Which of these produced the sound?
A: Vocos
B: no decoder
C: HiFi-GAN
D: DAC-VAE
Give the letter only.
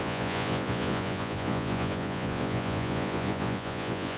A